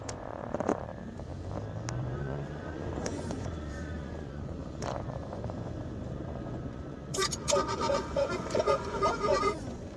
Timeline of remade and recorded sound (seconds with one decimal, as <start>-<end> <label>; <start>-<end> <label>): 0.0-0.9 remade; 0.9-2.0 recorded; 2.0-10.0 remade